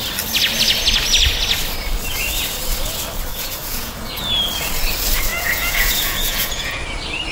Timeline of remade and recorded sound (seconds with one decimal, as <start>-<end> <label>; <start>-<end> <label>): 0.0-3.3 recorded; 3.3-4.2 remade; 4.2-5.3 recorded; 5.3-6.8 remade; 6.8-7.3 recorded